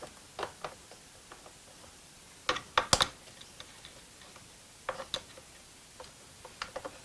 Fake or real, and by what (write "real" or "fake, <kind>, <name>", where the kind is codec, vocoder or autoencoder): real